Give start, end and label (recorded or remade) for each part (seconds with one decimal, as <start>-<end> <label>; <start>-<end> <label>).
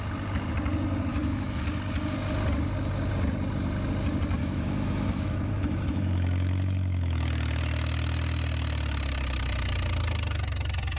0.0-1.1 recorded; 1.1-1.6 remade; 1.6-4.4 recorded; 4.4-7.6 remade; 7.6-11.0 recorded